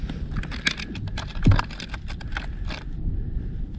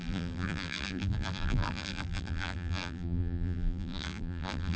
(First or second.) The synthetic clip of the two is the second